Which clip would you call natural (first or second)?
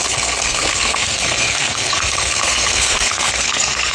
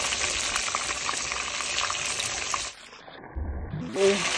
second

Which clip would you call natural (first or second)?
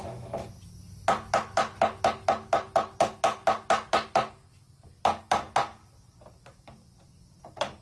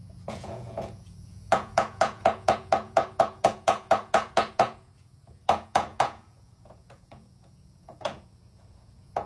first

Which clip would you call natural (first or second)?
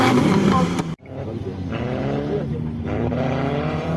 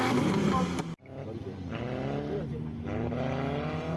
second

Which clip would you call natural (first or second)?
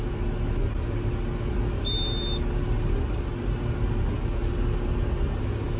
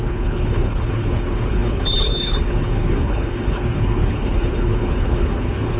first